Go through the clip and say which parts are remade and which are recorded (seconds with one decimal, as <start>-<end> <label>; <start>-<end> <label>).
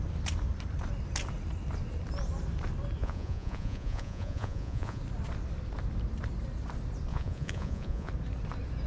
0.0-3.0 recorded; 3.0-5.0 remade; 5.0-7.1 recorded; 7.1-8.1 remade; 8.1-8.9 recorded